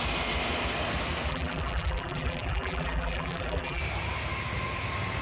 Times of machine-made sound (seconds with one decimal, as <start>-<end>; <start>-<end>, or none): 1.3-3.8